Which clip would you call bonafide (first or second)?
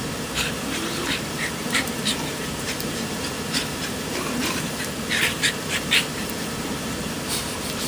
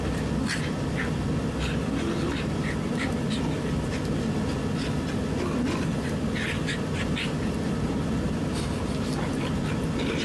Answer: second